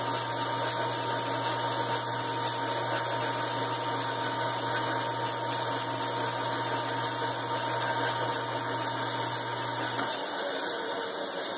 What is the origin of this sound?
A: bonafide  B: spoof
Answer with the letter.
A